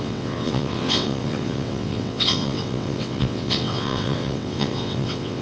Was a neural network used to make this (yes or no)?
yes